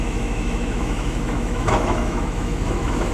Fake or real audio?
fake